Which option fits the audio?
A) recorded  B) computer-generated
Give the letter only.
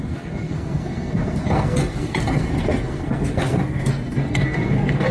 B